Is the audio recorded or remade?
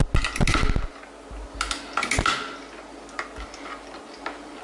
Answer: recorded